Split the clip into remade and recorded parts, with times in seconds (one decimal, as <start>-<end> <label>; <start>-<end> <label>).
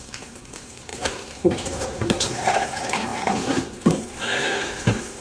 0.0-5.2 remade